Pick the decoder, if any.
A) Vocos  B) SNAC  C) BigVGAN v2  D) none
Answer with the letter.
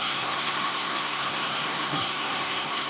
B